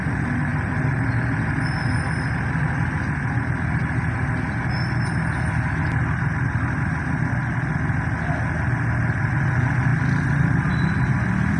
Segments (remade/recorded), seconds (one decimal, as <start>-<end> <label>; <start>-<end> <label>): 0.0-11.6 recorded